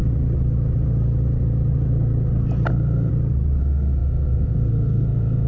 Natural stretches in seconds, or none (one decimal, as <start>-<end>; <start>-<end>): 0.0-2.7; 3.1-3.6